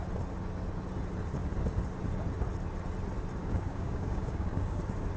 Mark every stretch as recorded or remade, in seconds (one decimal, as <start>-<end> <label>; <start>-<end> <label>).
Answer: 0.0-3.4 recorded; 3.4-4.8 remade; 4.8-5.2 recorded